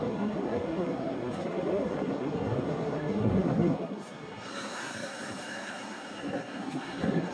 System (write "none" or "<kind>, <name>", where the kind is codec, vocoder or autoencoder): codec, SNAC